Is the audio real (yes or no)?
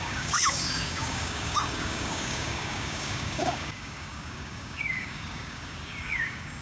no